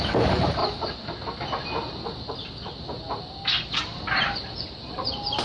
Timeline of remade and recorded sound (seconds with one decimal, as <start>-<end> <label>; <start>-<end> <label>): 0.0-0.6 remade; 0.6-3.8 recorded; 3.8-5.4 remade